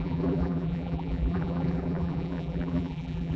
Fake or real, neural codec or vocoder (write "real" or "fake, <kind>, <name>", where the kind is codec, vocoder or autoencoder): fake, vocoder, BigVGAN v2